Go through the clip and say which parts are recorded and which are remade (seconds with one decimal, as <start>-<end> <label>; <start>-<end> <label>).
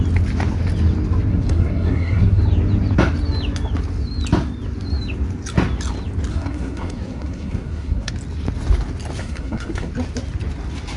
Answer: 0.0-1.3 recorded; 1.3-2.4 remade; 2.4-6.3 recorded; 6.3-8.1 remade; 8.1-9.2 recorded; 9.2-9.9 remade; 9.9-11.0 recorded